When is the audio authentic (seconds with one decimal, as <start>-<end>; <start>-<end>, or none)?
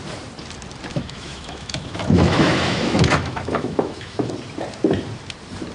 0.0-0.9; 4.3-5.7